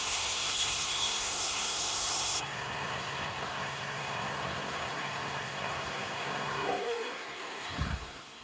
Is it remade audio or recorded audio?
remade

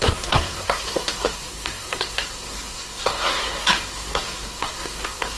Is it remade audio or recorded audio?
remade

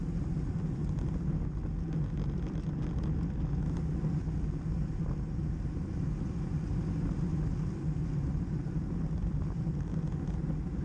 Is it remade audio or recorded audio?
recorded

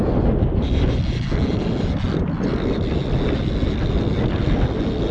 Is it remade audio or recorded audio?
recorded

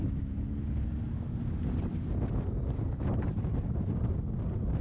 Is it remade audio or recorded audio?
recorded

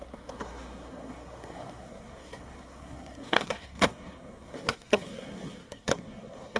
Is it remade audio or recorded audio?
remade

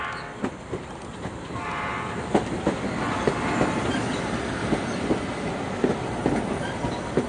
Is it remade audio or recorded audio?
recorded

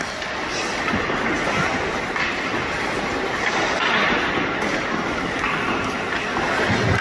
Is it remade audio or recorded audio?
recorded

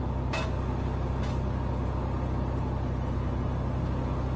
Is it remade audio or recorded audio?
recorded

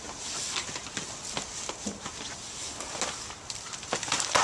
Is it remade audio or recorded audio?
recorded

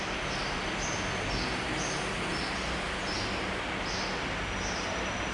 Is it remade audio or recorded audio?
recorded